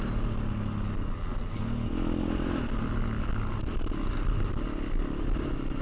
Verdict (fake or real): real